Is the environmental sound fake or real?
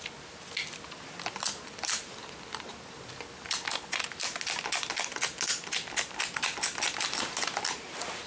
real